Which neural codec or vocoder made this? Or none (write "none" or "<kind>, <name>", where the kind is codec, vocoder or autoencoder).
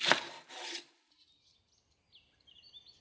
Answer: none